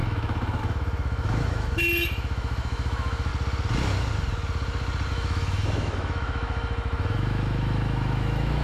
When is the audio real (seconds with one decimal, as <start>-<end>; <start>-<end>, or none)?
3.3-5.1